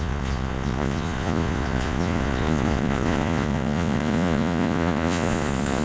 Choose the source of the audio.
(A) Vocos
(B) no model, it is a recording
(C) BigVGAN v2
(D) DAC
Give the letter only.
A